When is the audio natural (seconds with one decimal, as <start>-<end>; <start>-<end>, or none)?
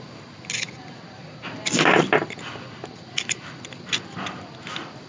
0.0-5.1